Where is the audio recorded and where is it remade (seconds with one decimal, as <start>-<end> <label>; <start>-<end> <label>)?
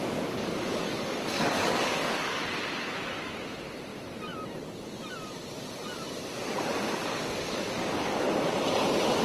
0.0-2.4 remade; 2.4-7.0 recorded; 7.0-8.2 remade; 8.2-9.2 recorded